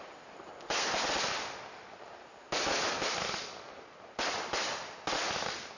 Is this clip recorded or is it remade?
recorded